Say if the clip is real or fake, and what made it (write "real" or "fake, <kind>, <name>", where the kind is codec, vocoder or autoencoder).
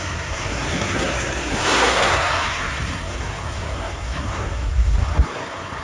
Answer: fake, codec, SNAC